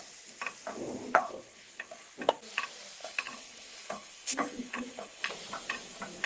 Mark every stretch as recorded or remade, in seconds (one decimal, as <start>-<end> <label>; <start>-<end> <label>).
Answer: 0.0-1.1 recorded; 1.1-1.9 remade; 1.9-3.0 recorded; 3.0-5.3 remade; 5.3-6.3 recorded

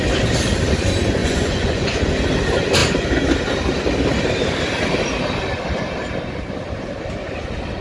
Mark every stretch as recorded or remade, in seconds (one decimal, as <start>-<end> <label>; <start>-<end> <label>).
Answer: 0.0-1.2 recorded; 1.2-2.1 remade; 2.1-7.8 recorded

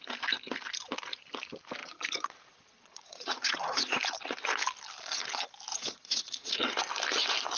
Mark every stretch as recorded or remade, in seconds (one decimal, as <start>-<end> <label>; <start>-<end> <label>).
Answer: 0.0-1.8 recorded; 1.8-4.0 remade; 4.0-5.7 recorded; 5.7-6.8 remade; 6.8-7.6 recorded